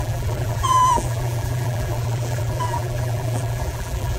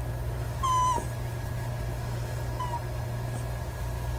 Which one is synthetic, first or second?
first